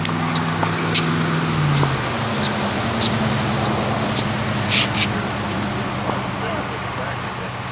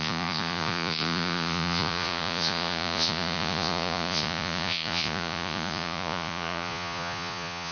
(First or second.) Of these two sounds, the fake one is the second